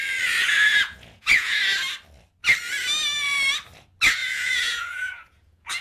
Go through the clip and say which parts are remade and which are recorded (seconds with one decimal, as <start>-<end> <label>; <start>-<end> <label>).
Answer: 0.0-0.7 recorded; 0.7-1.6 remade; 1.6-4.2 recorded; 4.2-5.8 remade